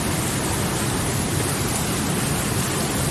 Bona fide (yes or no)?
yes